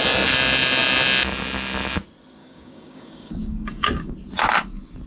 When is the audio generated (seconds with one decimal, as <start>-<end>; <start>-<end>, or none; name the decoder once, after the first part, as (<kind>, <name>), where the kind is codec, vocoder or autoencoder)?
2.4-4.1 (codec, DAC)